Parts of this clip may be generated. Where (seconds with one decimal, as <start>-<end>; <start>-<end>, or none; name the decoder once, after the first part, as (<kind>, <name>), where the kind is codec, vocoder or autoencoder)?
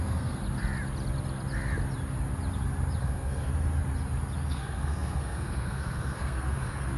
0.0-0.4 (codec, SNAC); 3.0-3.5; 4.5-7.0